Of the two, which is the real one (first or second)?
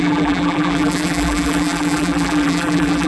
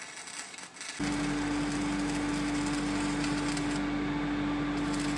second